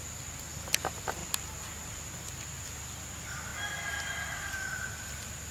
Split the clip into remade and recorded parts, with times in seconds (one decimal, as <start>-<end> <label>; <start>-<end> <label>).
0.0-5.5 recorded